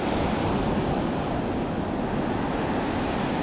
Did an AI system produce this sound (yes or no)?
no